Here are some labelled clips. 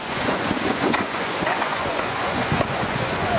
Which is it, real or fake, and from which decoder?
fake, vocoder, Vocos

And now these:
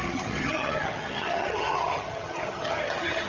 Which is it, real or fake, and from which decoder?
fake, vocoder, HiFi-GAN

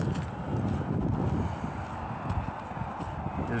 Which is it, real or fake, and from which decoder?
real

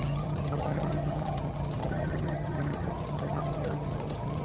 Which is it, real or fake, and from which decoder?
fake, vocoder, HiFi-GAN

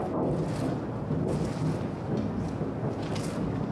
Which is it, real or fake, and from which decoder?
real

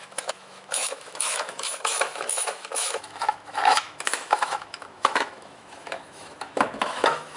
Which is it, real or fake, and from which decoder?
fake, autoencoder, DAC-VAE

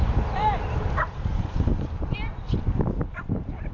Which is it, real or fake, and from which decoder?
fake, vocoder, BigVGAN v2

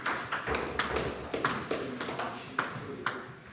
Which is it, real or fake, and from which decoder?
real